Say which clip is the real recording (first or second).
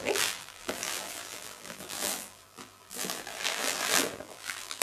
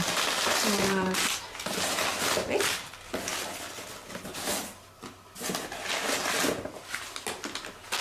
second